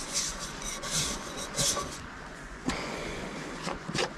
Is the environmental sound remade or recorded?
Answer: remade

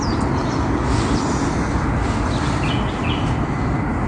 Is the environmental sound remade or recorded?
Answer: recorded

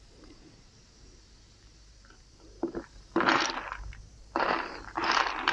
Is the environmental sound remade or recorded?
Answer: remade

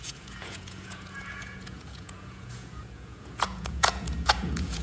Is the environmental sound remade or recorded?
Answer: remade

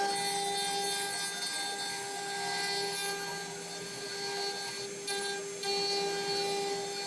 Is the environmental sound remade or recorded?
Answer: recorded